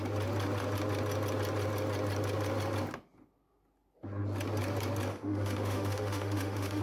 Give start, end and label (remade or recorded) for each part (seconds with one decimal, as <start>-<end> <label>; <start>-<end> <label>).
0.0-5.1 recorded; 5.1-6.8 remade